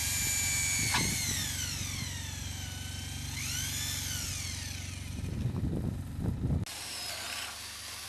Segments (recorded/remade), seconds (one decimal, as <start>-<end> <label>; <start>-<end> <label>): 0.0-8.1 recorded